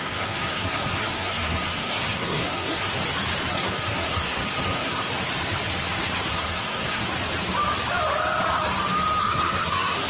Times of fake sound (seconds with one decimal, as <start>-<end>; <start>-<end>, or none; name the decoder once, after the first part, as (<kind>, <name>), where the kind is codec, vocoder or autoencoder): 0.0-2.9 (codec, SNAC); 3.5-5.1; 6.3-7.0; 9.2-10.1